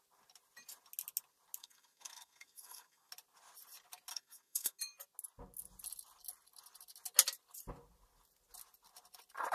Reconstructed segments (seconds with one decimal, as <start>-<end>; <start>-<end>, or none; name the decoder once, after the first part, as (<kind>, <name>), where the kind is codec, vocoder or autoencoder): 1.6-3.1 (codec, SNAC); 4.1-4.8